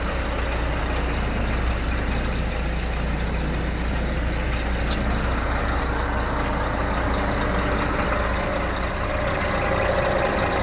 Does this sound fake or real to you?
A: real